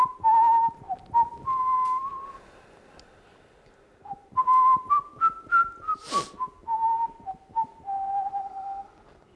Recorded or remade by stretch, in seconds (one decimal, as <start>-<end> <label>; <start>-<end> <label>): 0.0-9.4 recorded